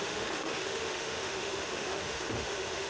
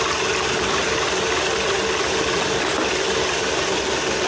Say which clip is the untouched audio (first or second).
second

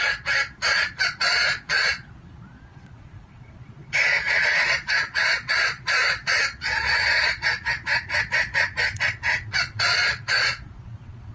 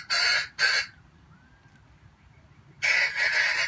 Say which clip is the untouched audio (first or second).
second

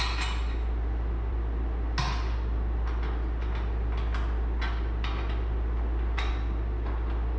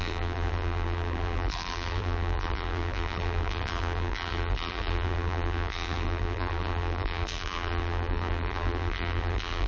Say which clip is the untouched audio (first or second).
first